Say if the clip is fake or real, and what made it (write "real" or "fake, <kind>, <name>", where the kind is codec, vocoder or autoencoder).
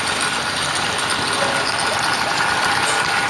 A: real